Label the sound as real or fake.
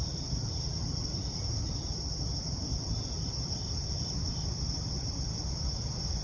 real